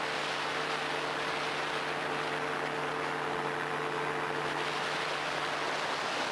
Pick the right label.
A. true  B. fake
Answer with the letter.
A